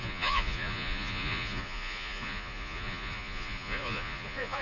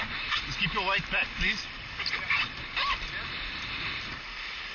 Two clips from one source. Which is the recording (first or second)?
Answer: second